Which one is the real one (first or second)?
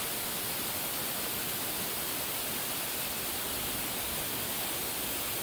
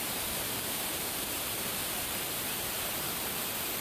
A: first